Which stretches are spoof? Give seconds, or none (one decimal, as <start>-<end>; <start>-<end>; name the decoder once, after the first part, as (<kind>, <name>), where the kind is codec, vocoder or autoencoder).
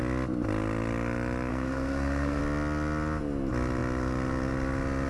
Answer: 1.5-2.4 (codec, SNAC)